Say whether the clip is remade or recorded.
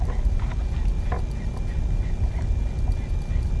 recorded